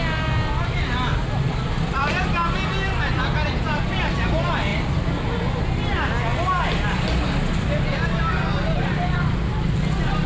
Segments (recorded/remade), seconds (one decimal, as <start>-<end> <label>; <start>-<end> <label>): 0.0-1.6 recorded; 1.6-2.2 remade; 2.2-4.7 recorded; 4.7-5.6 remade; 5.6-10.3 recorded